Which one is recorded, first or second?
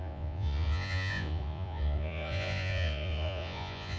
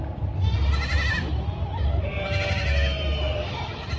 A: second